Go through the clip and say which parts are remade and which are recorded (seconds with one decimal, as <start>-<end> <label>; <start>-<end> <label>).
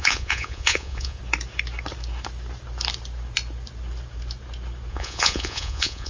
0.0-1.2 remade; 1.2-4.9 recorded; 4.9-6.1 remade